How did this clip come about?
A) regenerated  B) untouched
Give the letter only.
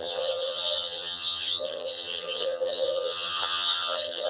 A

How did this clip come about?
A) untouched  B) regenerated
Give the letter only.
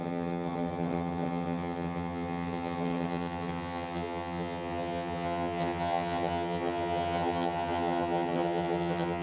B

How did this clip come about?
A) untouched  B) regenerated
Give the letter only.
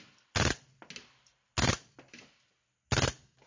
A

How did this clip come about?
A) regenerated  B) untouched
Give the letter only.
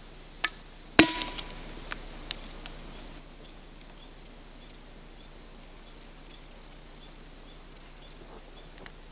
B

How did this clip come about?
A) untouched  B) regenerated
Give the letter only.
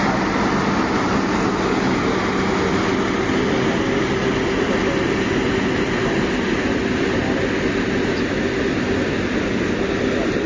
A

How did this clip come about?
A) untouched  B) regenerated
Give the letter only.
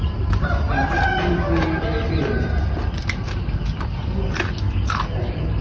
A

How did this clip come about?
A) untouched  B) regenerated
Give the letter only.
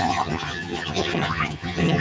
B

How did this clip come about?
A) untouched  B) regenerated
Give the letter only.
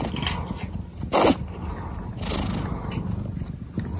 A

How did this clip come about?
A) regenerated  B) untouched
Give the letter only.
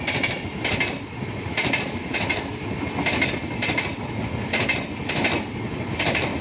B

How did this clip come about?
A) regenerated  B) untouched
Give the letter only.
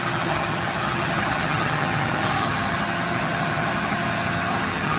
A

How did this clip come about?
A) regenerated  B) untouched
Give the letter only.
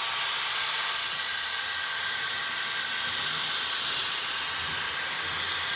B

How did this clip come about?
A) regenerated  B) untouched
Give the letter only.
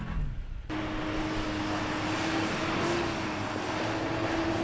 B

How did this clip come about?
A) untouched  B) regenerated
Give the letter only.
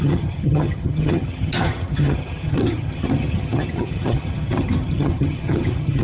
B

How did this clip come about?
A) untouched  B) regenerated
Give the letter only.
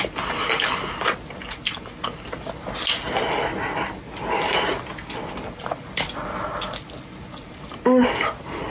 A